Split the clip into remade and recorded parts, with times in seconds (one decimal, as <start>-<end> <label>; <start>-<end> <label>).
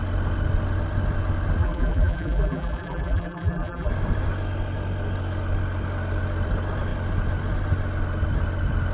0.0-1.6 recorded; 1.6-3.9 remade; 3.9-8.9 recorded